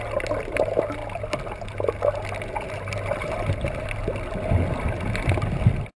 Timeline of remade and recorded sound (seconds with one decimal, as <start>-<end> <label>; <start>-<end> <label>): 0.0-6.0 recorded